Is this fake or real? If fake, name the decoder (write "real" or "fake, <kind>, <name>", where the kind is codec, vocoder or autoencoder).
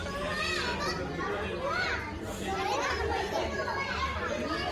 real